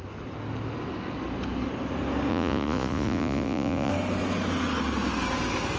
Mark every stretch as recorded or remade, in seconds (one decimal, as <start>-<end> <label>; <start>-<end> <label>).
0.0-2.3 recorded; 2.3-3.9 remade; 3.9-5.8 recorded